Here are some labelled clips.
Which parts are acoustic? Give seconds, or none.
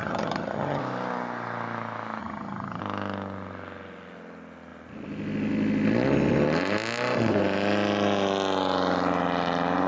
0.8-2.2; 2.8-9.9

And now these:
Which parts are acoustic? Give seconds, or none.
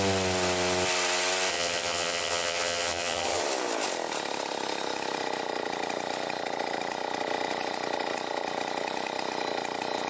0.0-1.5; 3.4-10.1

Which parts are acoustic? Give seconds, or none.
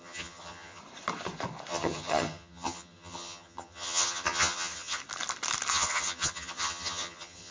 0.8-1.7; 5.0-5.7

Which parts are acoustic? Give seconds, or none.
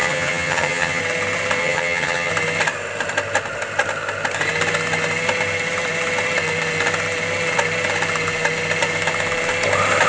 1.0-1.6; 2.3-10.1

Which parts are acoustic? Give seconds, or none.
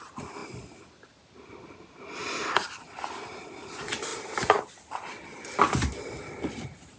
0.0-7.0